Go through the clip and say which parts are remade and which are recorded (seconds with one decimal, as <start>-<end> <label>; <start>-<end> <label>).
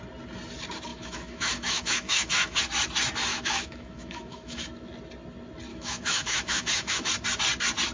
0.0-0.9 recorded; 0.9-2.6 remade; 2.6-3.3 recorded; 3.3-4.6 remade; 4.6-5.7 recorded; 5.7-7.1 remade; 7.1-7.9 recorded